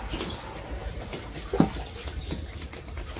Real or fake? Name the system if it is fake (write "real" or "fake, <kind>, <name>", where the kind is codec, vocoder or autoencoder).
real